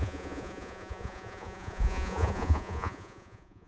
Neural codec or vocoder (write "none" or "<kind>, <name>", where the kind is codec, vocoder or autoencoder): vocoder, Vocos